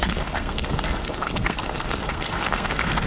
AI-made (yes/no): yes